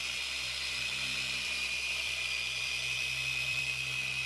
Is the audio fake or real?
fake